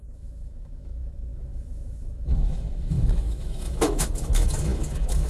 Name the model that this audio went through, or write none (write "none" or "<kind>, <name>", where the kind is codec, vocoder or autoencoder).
autoencoder, DAC-VAE